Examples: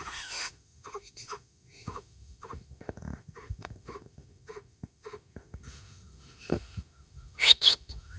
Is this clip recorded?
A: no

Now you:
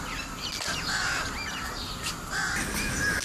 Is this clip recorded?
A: yes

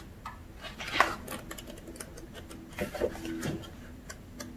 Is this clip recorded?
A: yes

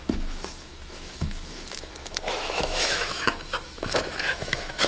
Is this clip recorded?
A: no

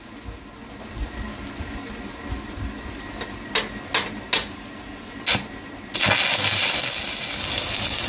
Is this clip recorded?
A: yes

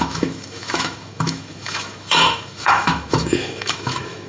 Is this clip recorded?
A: no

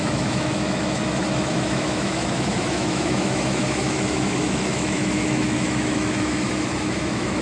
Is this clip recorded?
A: no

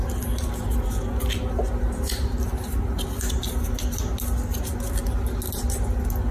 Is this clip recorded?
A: yes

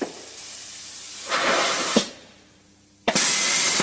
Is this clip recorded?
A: yes